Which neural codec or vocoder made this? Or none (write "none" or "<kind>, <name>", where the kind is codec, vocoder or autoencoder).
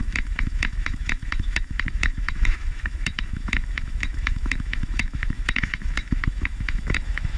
autoencoder, DAC-VAE